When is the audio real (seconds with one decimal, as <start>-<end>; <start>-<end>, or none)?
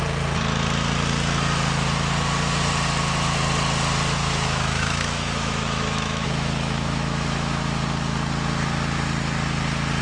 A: 0.0-4.2; 7.8-10.0